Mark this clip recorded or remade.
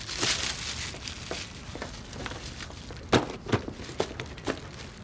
recorded